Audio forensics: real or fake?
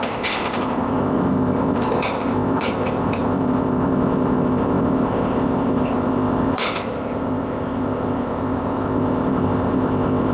fake